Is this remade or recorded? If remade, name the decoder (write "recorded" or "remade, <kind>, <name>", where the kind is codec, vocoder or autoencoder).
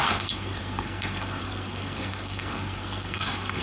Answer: remade, codec, SNAC